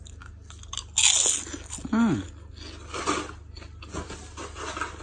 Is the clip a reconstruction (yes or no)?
no